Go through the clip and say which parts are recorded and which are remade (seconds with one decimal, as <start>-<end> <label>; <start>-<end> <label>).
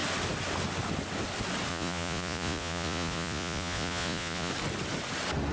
0.0-1.7 recorded; 1.7-4.5 remade; 4.5-5.5 recorded